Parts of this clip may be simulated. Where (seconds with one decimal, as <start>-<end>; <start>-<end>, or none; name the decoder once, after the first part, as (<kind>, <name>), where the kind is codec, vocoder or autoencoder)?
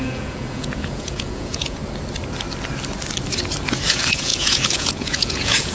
0.0-1.8 (vocoder, Vocos); 3.9-5.7